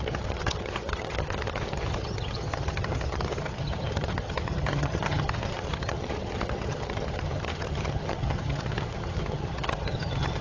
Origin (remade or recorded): remade